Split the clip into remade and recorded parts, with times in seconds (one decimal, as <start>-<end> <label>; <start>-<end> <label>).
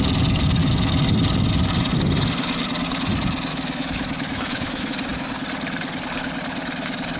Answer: 0.0-3.5 recorded; 3.5-4.9 remade; 4.9-7.2 recorded